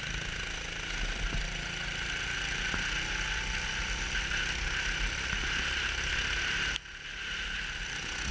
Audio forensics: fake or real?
real